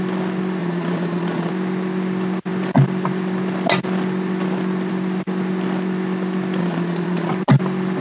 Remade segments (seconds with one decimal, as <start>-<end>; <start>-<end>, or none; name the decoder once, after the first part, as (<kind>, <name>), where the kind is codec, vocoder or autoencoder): 0.6-1.5 (vocoder, Vocos); 6.6-7.3

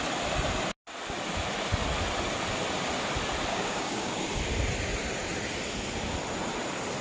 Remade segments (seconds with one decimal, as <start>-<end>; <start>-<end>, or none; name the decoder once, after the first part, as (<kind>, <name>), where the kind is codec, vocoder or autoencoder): 3.5-4.2 (codec, DAC)